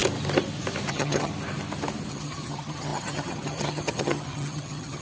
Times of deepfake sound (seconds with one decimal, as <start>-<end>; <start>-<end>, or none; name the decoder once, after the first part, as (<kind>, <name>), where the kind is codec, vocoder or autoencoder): 0.9-1.3 (vocoder, HiFi-GAN); 2.1-5.0